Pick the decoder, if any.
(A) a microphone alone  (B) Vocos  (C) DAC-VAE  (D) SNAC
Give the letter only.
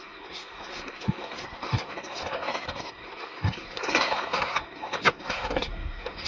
D